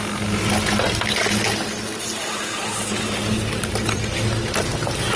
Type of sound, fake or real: real